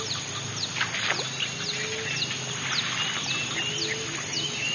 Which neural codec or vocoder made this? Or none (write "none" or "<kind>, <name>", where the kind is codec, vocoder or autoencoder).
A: none